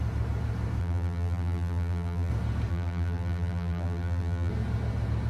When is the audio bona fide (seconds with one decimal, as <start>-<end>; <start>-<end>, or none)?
0.0-0.8; 2.3-2.7; 4.5-5.3